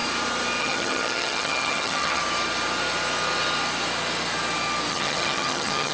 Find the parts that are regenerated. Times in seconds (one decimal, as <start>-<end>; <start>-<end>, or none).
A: 0.6-2.2; 4.9-5.9